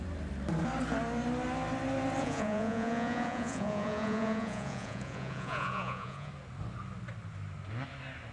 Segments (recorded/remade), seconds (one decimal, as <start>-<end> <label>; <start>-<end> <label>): 0.0-2.2 recorded; 2.2-6.3 remade; 6.3-8.3 recorded

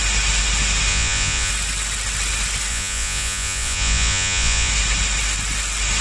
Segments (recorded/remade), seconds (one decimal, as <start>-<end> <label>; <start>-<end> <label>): 0.0-0.9 recorded; 0.9-1.5 remade; 1.5-2.7 recorded; 2.7-4.7 remade; 4.7-6.0 recorded

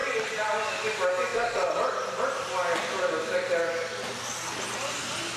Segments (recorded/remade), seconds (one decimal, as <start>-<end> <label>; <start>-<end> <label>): 0.0-0.7 remade; 0.7-1.3 recorded; 1.3-3.1 remade; 3.1-5.4 recorded